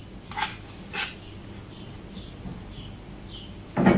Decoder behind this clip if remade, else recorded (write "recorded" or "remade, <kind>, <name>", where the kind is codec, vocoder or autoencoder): recorded